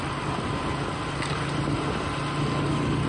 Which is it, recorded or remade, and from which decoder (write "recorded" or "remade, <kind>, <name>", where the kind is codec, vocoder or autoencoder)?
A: recorded